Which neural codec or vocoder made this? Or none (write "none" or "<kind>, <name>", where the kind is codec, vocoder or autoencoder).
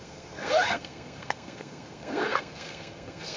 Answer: codec, SNAC